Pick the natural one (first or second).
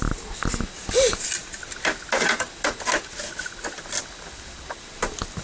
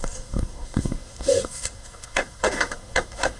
first